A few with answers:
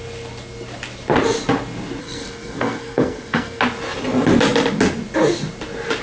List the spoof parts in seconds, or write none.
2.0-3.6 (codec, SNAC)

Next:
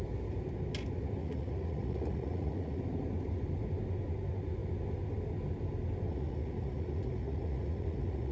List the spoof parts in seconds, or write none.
1.2-2.8 (vocoder, Vocos); 6.1-8.3

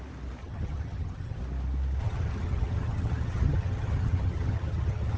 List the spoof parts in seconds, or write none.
0.4-1.4 (vocoder, HiFi-GAN); 2.0-5.2

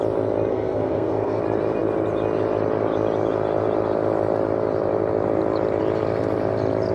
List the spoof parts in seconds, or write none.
0.5-1.4 (codec, SNAC)

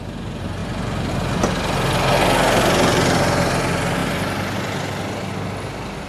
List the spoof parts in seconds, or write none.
0.6-1.1 (vocoder, BigVGAN v2); 4.0-5.3

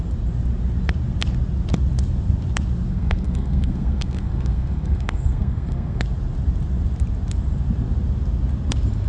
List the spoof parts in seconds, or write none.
2.9-6.0 (codec, SNAC)